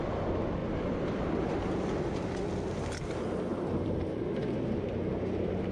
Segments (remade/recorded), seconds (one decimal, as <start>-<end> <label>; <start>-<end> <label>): 0.0-0.6 recorded; 0.6-1.3 remade; 1.3-3.5 recorded; 3.5-5.0 remade; 5.0-5.7 recorded